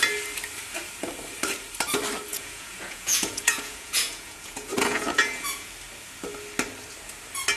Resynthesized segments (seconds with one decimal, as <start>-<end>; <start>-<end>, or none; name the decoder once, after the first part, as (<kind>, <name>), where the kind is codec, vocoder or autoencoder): 2.3-5.7 (vocoder, Vocos)